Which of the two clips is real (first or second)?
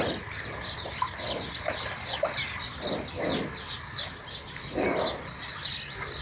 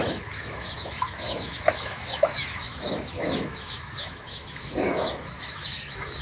first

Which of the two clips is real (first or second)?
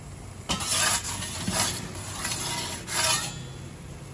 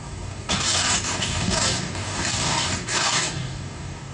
first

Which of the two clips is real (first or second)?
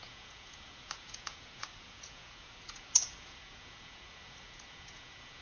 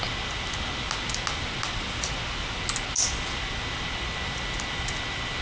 second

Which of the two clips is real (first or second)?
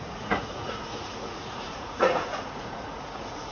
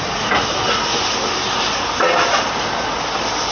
second